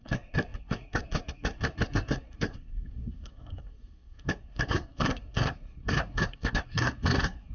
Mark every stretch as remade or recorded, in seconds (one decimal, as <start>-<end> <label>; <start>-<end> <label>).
0.0-7.5 remade